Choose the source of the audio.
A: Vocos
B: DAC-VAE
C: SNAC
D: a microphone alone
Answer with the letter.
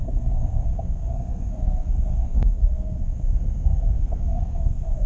C